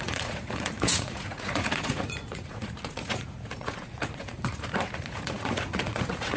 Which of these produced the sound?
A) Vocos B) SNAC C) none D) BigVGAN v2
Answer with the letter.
A